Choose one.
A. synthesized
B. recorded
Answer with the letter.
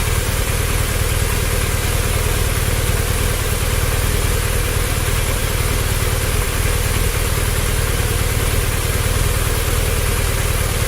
B